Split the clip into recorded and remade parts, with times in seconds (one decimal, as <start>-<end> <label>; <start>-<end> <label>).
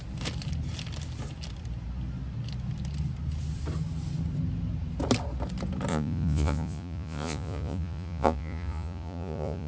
0.0-5.9 recorded; 5.9-9.7 remade